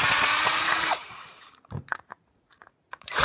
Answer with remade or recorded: remade